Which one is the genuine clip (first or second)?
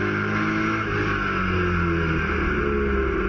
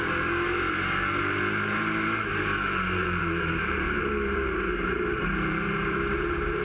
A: first